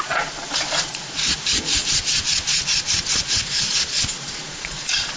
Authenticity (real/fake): fake